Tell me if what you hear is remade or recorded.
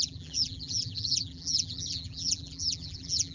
remade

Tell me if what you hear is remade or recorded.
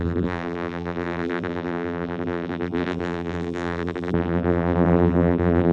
remade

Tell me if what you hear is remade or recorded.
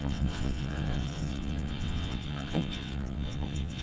remade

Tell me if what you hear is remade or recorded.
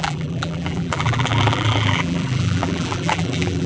remade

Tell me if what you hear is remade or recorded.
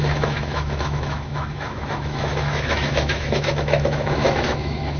remade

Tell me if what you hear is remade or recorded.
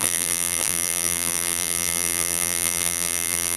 remade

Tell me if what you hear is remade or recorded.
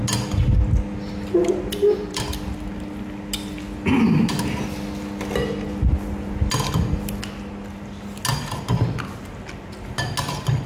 recorded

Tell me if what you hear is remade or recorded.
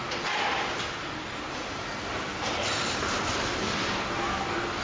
recorded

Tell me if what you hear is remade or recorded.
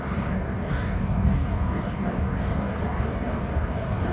remade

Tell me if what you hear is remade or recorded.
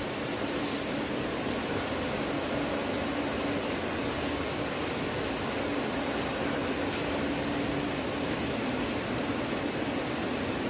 recorded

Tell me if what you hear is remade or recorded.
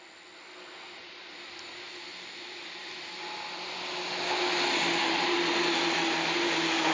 recorded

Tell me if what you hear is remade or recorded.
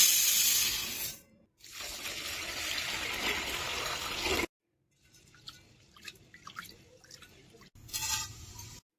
recorded